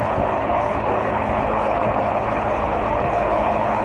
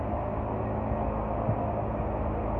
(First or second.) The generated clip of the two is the first